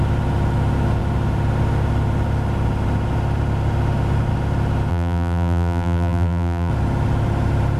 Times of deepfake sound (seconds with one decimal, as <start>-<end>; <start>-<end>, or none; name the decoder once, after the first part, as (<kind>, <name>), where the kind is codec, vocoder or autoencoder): 4.9-6.7 (vocoder, BigVGAN v2)